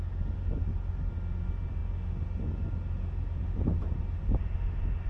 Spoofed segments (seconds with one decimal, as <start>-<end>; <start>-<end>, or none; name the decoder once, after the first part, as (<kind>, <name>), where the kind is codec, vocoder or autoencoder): none

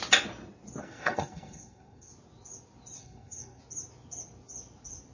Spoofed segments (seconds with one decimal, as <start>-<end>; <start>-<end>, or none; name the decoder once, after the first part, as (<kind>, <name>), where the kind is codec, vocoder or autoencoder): 0.8-2.1 (codec, SNAC); 3.0-3.6

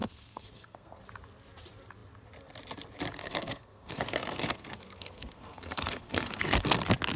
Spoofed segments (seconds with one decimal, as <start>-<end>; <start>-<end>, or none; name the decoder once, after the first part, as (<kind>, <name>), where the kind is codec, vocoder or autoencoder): 0.0-1.0 (codec, SNAC); 3.2-6.8

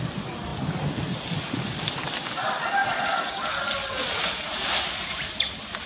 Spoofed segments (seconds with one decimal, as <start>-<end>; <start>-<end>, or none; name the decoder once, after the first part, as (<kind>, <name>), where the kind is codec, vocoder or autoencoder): none

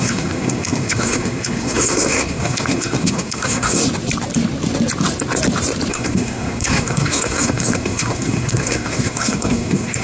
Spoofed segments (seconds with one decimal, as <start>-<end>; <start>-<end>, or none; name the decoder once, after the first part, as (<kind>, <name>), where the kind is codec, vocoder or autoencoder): 0.0-3.8 (codec, SNAC); 5.9-10.0

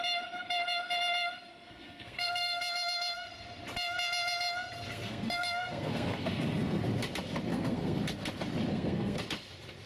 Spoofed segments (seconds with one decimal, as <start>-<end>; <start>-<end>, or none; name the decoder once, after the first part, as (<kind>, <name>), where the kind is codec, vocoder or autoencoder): 1.5-2.6 (codec, SNAC); 4.9-6.8; 7.5-8.0; 8.7-9.2

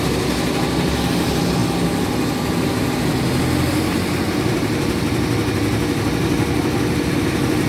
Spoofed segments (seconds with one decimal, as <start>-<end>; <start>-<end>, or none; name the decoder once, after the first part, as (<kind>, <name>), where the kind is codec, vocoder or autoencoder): none